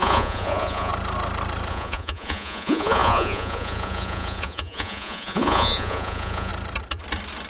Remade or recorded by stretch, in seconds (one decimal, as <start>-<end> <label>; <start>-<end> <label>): 0.0-0.9 remade; 0.9-1.7 recorded; 1.7-6.5 remade; 6.5-7.5 recorded